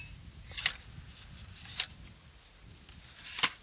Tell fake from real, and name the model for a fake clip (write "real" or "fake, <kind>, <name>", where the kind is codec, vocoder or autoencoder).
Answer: real